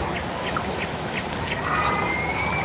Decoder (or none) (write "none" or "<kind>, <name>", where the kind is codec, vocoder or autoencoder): none